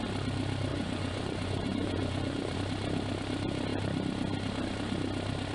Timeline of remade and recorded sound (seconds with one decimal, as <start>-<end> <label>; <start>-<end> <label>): 0.0-0.7 recorded; 0.7-2.6 remade; 2.6-5.5 recorded